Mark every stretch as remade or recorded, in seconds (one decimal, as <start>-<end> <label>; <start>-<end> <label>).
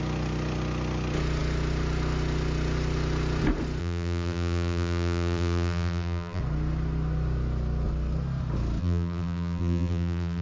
0.0-3.8 recorded; 3.8-6.4 remade; 6.4-8.8 recorded; 8.8-10.4 remade